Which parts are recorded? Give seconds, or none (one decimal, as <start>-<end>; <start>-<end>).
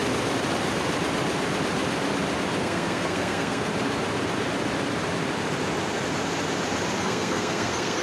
0.0-2.6; 3.7-7.0